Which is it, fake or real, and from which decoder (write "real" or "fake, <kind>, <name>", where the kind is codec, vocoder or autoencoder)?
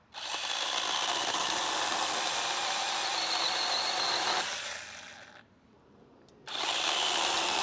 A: real